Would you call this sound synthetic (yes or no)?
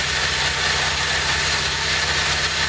no